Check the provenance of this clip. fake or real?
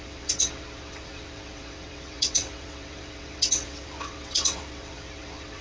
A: fake